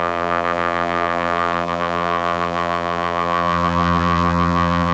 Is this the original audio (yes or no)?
no